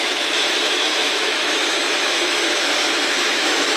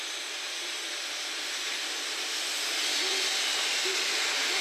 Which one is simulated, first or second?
first